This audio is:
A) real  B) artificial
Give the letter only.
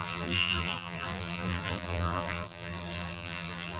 B